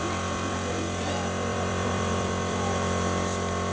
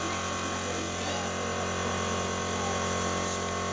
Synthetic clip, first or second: first